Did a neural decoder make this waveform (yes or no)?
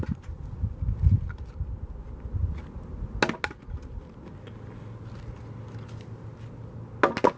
no